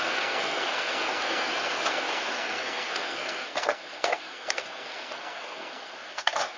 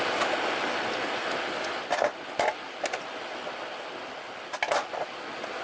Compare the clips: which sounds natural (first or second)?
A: second